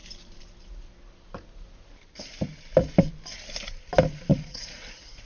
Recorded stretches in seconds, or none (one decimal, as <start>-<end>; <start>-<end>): 0.0-4.3